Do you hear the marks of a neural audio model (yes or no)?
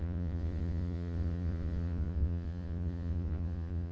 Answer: yes